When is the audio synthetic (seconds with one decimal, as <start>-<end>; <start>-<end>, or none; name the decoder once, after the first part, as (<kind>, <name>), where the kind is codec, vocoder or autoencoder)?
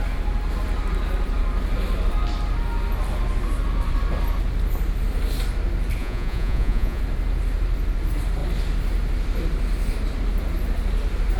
6.0-7.0 (vocoder, Vocos)